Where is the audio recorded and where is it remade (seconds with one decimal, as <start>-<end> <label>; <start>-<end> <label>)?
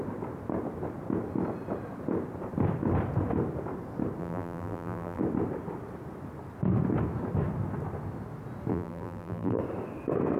0.0-4.2 recorded; 4.2-5.2 remade; 5.2-8.7 recorded; 8.7-9.6 remade; 9.6-10.4 recorded